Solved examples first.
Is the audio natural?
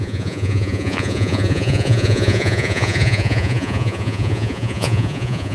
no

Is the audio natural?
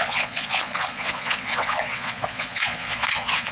no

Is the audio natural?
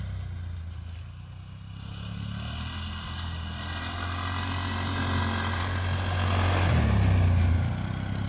yes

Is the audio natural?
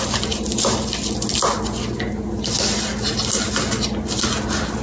yes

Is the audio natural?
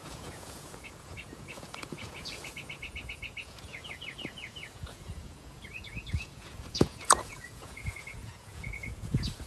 no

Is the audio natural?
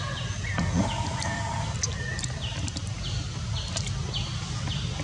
yes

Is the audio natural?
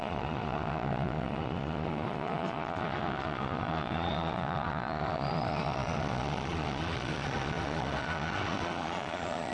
no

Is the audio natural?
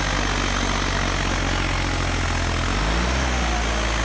yes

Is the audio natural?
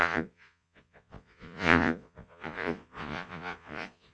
no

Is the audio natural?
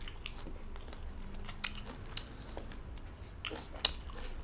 yes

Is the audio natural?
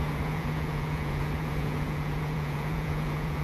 no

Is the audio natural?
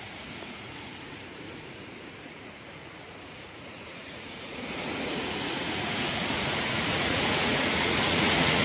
no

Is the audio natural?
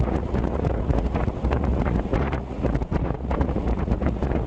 no